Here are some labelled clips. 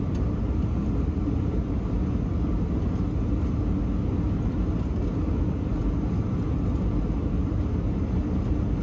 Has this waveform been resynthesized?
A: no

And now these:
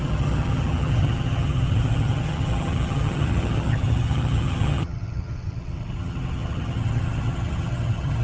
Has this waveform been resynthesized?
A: yes